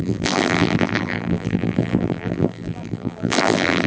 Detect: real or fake fake